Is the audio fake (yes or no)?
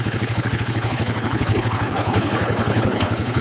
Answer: yes